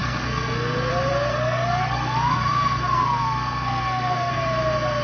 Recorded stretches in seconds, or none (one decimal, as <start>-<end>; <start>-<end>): 0.9-1.3; 4.3-5.0